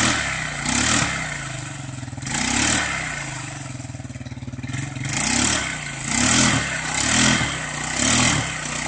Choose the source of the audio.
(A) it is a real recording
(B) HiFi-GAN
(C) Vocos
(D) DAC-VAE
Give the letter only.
A